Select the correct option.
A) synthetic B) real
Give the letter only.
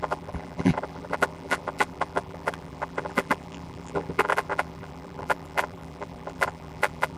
A